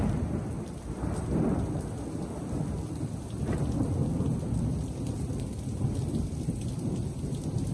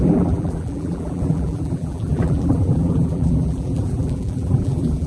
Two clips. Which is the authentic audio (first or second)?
first